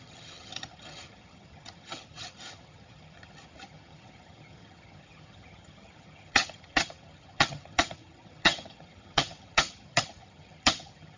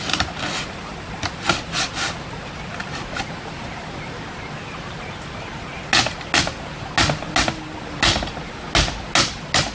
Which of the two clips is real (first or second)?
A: second